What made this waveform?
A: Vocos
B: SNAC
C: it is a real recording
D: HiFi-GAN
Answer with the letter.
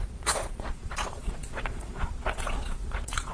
A